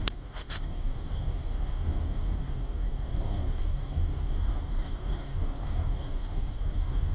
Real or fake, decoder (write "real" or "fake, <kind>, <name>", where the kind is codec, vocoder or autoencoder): fake, codec, DAC